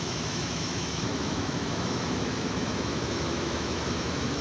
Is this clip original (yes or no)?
no